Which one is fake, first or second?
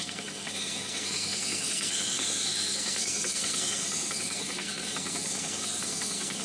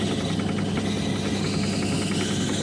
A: first